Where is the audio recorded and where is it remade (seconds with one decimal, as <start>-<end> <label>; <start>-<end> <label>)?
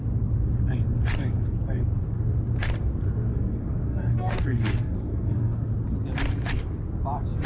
0.0-3.3 recorded; 3.3-5.7 remade; 5.7-7.5 recorded